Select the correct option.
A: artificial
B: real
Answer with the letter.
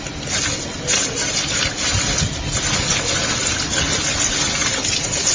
B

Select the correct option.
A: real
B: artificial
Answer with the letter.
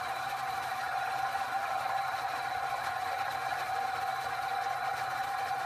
A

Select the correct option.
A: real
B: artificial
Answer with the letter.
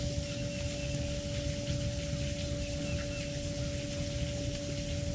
A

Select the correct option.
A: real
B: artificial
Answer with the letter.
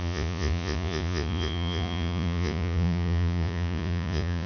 B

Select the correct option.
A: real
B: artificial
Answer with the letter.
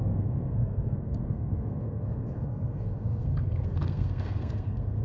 B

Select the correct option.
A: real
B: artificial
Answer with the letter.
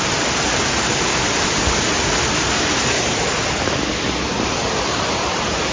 A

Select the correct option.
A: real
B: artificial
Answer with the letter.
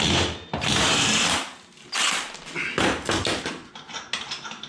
A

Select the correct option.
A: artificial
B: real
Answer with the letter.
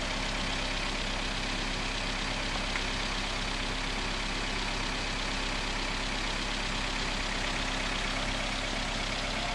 B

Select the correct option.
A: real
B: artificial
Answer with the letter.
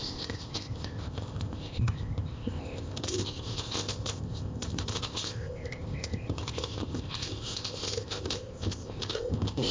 B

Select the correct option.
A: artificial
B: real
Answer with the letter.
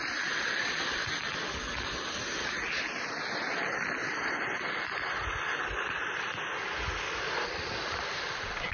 B